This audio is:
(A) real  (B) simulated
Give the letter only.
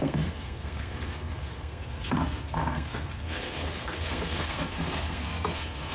B